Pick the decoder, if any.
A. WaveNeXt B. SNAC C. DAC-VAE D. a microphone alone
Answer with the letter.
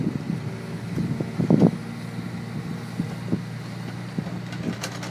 D